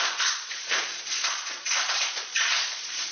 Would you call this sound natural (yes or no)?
no